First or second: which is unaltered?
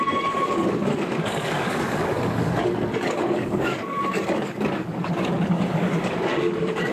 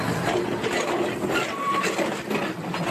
second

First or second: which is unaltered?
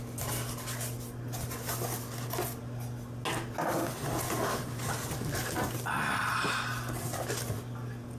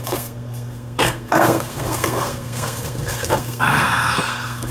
first